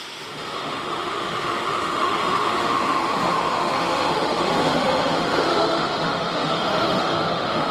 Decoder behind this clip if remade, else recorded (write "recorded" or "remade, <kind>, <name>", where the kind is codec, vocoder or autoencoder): remade, autoencoder, DAC-VAE